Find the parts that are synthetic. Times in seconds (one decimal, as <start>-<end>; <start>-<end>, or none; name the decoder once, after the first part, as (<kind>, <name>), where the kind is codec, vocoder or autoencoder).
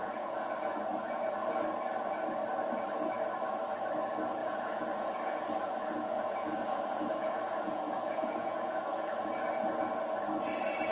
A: 0.0-0.5 (vocoder, Vocos); 4.4-9.3